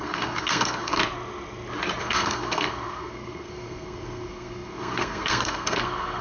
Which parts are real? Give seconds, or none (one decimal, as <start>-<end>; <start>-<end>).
1.0-2.0